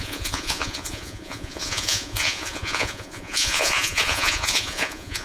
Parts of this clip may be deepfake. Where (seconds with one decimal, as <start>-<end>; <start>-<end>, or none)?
0.0-5.2